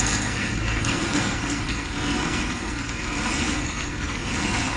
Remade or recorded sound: remade